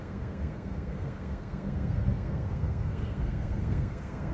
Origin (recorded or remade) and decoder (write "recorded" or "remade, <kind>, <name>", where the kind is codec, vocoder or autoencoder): remade, codec, SNAC